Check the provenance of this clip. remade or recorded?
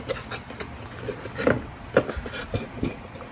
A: recorded